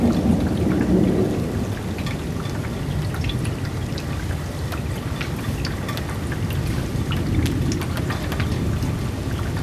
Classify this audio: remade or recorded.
recorded